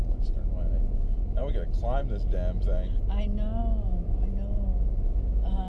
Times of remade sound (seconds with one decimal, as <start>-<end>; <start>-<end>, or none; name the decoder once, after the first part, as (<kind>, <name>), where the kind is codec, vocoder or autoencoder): none